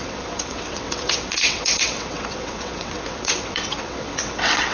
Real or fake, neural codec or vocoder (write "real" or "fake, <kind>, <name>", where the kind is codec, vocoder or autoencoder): fake, vocoder, WaveNeXt